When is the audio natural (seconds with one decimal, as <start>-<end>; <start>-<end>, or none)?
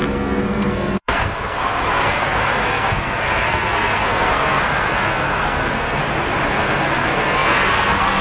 6.0-6.5